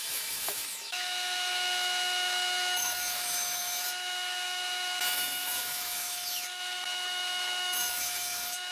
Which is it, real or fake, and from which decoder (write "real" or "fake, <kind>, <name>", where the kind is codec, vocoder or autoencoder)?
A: fake, autoencoder, DAC-VAE